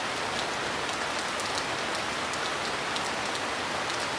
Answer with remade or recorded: recorded